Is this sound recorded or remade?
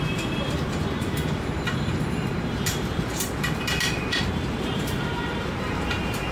remade